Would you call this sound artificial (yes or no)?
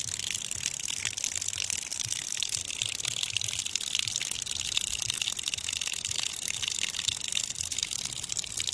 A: no